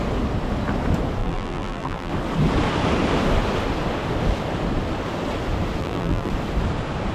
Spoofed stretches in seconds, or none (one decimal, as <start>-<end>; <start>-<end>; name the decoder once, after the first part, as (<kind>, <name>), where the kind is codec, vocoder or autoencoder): 1.2-2.1 (vocoder, BigVGAN v2); 5.8-6.3